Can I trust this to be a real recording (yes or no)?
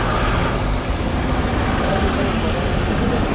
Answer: yes